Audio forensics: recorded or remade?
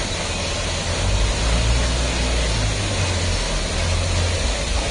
recorded